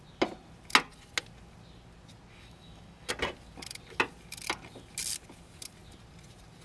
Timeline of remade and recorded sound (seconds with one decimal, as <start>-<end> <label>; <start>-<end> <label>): 0.0-2.3 recorded; 2.3-3.1 remade; 3.1-6.6 recorded